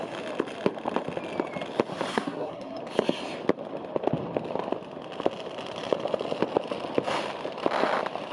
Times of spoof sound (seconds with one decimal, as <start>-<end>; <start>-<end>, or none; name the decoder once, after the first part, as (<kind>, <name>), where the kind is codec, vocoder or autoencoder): 2.1-2.8 (codec, SNAC)